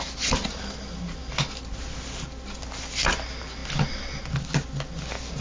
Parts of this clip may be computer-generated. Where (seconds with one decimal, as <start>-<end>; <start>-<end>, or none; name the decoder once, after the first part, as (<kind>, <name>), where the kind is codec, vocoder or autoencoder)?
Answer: none

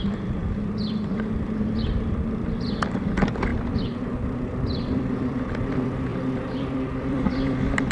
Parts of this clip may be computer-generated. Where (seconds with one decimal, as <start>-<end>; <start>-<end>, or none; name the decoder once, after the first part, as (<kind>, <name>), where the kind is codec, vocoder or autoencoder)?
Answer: 0.0-7.9 (vocoder, BigVGAN v2)

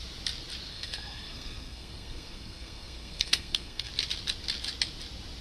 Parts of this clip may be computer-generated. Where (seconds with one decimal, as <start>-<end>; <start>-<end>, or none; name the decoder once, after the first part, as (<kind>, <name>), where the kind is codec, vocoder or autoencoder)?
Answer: 0.7-3.9 (codec, SNAC)

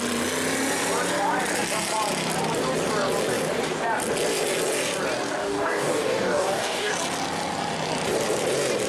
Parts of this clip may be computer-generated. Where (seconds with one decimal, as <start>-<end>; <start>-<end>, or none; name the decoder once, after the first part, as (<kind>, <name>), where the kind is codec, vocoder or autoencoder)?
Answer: 5.4-6.9 (codec, DAC)

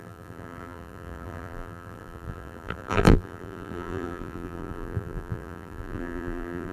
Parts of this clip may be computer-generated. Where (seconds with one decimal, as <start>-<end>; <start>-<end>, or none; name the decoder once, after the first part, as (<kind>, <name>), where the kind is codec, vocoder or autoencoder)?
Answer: 0.0-6.7 (vocoder, BigVGAN v2)

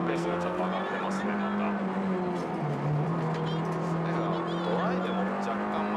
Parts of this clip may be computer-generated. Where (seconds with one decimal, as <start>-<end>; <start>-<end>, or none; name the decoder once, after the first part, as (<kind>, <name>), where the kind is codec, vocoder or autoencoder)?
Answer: 0.0-0.6 (codec, SNAC)